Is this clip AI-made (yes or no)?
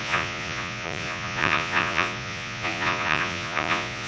yes